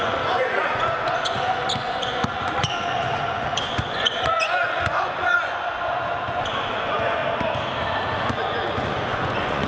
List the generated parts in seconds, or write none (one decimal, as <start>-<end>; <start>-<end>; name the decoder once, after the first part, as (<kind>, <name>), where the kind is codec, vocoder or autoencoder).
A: 0.0-7.2 (vocoder, Vocos); 8.1-9.7